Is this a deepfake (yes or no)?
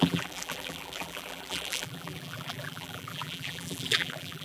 yes